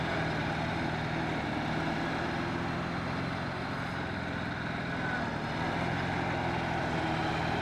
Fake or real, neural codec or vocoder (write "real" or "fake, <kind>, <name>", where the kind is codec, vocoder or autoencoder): real